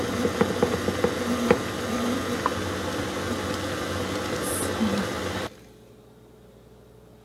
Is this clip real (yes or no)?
yes